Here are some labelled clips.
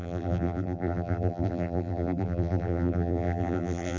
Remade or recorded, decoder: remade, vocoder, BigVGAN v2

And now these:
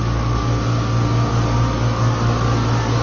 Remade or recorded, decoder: recorded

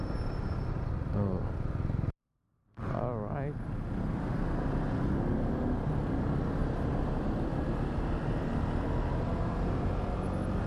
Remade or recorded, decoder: recorded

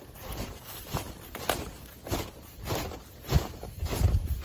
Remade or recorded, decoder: remade, vocoder, BigVGAN v2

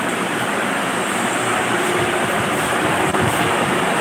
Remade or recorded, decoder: remade, vocoder, BigVGAN v2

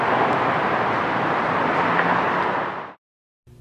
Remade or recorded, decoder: remade, vocoder, BigVGAN v2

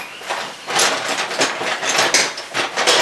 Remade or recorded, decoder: recorded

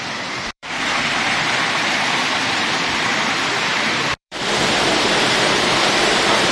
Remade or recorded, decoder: remade, vocoder, BigVGAN v2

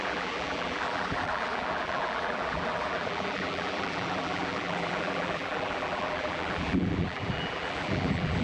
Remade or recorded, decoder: remade, vocoder, BigVGAN v2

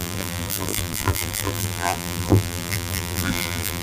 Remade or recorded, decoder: remade, vocoder, BigVGAN v2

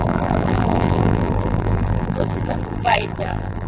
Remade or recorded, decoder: remade, vocoder, BigVGAN v2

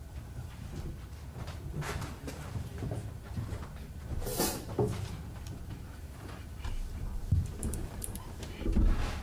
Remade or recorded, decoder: remade, vocoder, BigVGAN v2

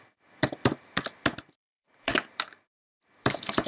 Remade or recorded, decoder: remade, vocoder, BigVGAN v2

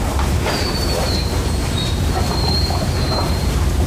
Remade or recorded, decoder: remade, vocoder, BigVGAN v2